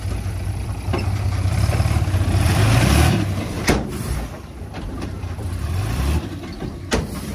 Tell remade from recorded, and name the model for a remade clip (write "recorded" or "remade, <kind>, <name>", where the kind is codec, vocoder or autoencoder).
remade, vocoder, BigVGAN v2